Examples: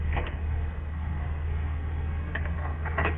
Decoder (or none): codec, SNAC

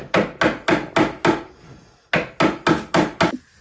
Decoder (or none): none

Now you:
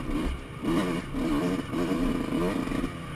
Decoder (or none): vocoder, BigVGAN v2